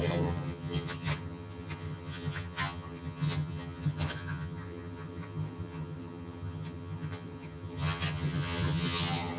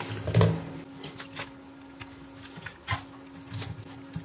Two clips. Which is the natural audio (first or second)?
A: second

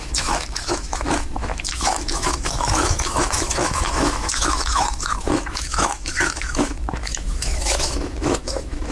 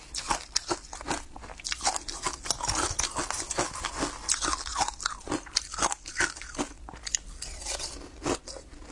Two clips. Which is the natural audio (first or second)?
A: second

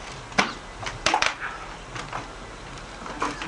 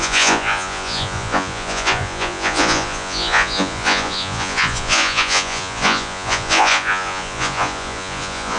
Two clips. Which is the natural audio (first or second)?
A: first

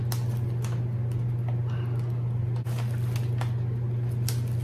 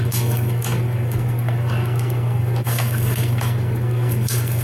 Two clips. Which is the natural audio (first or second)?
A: first